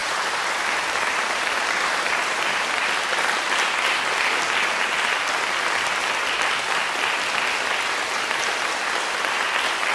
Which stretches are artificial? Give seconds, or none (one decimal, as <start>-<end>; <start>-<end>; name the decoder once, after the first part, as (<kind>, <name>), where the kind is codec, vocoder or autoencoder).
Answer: 0.0-2.7 (vocoder, BigVGAN v2)